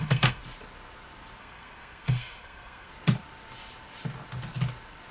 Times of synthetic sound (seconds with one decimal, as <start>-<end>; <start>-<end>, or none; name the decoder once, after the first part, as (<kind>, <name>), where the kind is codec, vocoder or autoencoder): 0.0-0.4 (codec, SNAC); 1.4-2.9